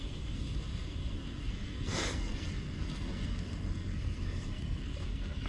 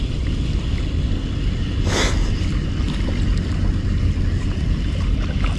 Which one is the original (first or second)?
second